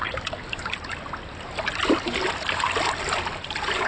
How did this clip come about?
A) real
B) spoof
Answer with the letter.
A